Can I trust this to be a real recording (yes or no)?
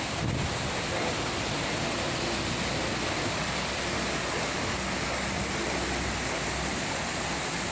yes